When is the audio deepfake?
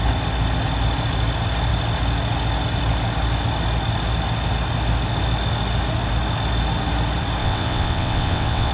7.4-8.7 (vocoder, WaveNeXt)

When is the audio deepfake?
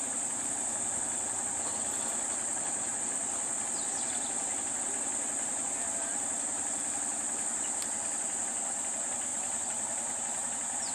9.3-10.9 (vocoder, BigVGAN v2)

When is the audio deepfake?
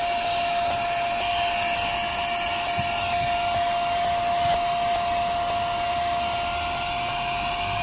none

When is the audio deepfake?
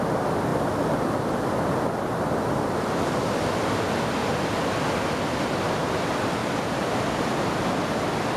6.4-7.1 (vocoder, BigVGAN v2)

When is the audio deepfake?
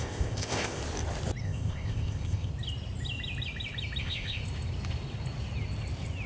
0.0-0.8 (codec, ZipCodec); 1.4-2.5; 4.0-4.4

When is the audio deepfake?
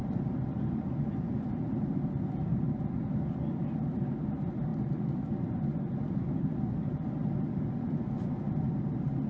none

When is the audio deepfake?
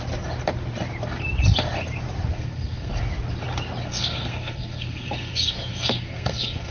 2.3-2.9 (codec, SNAC); 3.8-6.7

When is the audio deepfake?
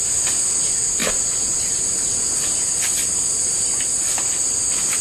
none